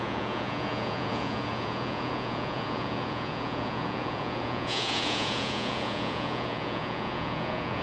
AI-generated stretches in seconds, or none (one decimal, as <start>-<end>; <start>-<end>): 0.0-7.8